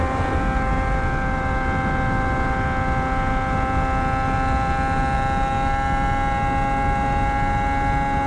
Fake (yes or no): no